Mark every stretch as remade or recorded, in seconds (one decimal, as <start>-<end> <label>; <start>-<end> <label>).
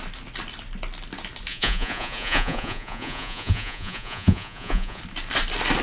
0.0-1.5 recorded; 1.5-5.0 remade; 5.0-5.8 recorded